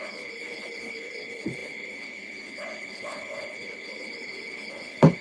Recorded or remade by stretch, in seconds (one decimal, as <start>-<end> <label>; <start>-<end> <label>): 0.0-5.2 remade